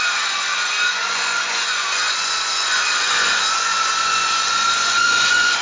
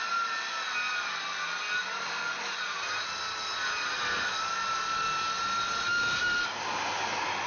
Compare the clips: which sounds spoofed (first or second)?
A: first